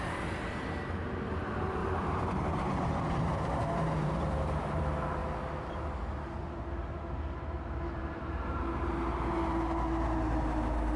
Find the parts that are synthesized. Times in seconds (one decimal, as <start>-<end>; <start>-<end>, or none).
1.8-4.8; 8.0-8.6